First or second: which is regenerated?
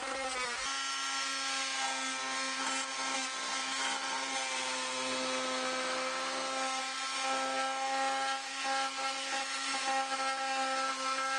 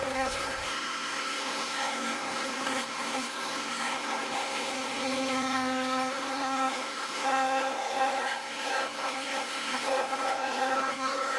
second